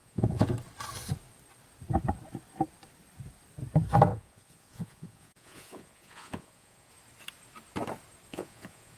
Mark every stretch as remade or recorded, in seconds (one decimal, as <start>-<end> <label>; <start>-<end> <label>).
0.0-0.5 remade; 0.5-4.1 recorded; 4.1-6.9 remade; 6.9-8.3 recorded; 8.3-9.0 remade